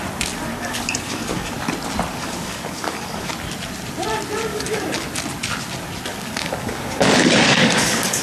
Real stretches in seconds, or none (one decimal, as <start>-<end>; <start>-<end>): 0.0-0.5; 1.5-2.1; 3.3-4.5; 5.1-6.1